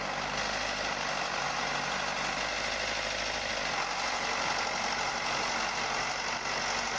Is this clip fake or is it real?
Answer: real